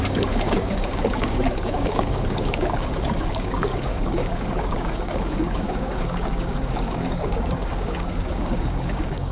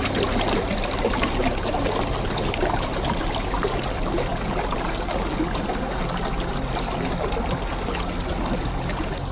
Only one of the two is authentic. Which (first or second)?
second